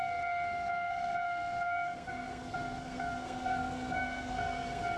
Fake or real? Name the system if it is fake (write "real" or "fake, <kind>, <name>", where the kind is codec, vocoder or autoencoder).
fake, codec, SNAC